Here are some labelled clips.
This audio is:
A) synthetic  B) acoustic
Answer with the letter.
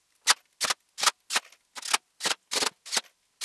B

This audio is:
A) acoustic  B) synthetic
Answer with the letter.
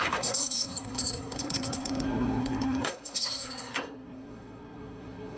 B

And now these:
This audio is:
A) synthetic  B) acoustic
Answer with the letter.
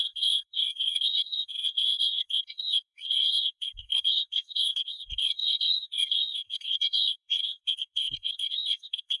A